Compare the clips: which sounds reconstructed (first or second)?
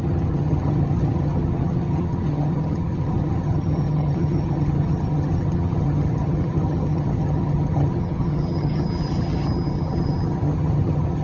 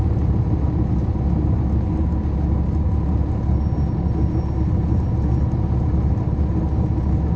first